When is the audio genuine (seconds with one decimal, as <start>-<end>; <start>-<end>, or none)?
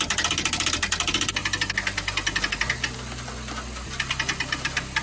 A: 0.0-5.0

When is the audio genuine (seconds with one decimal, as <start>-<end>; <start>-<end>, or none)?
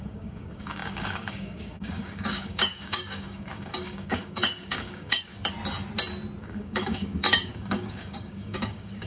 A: 5.3-6.4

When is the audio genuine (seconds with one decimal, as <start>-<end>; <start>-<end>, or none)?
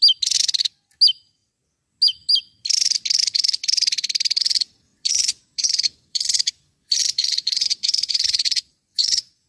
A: 0.0-4.9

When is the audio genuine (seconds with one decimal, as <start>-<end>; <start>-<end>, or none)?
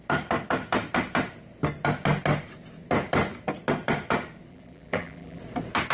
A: 0.0-4.5; 5.4-5.9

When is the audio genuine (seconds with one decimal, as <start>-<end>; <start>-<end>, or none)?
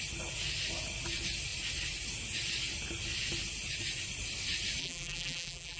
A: 0.0-4.8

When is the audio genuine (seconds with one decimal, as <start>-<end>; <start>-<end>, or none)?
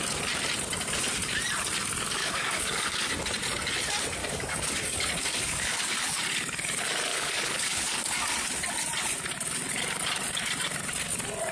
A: 0.0-2.2; 3.1-4.2; 6.2-7.1; 8.2-11.5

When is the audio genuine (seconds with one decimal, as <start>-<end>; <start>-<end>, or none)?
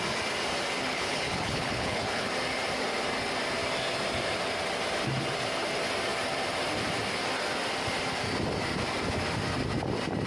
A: 0.0-0.8; 2.3-10.3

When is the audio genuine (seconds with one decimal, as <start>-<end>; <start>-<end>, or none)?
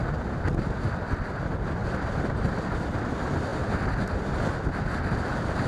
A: 0.0-1.8; 2.5-5.7